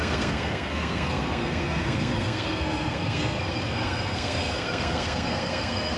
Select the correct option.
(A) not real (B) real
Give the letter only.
A